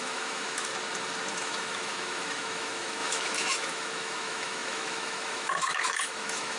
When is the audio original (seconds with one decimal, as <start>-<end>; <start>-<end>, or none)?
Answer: 0.7-1.3